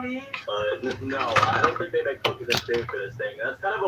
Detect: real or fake fake